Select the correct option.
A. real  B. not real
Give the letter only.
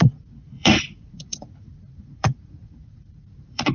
B